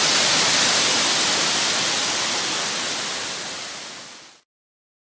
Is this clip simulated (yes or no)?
no